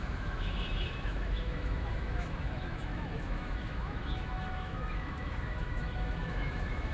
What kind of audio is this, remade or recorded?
remade